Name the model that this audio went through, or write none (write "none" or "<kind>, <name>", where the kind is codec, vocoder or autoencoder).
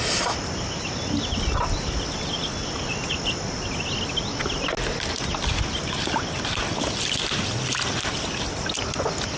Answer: none